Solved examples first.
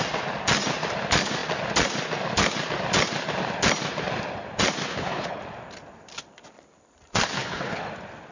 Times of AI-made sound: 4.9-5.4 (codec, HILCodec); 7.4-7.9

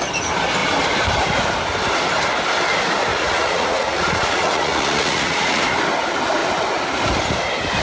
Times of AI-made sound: 3.1-5.6 (vocoder, Vocos)

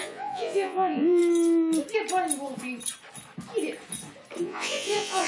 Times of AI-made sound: 0.0-1.2 (vocoder, Vocos); 4.4-5.3

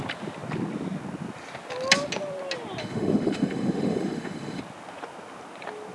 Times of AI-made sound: 2.8-4.6 (autoencoder, DAC-VAE)